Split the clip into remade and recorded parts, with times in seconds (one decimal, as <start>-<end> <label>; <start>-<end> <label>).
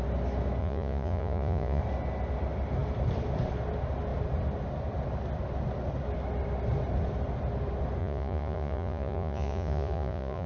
0.0-0.6 recorded; 0.6-1.8 remade; 1.8-8.0 recorded; 8.0-10.5 remade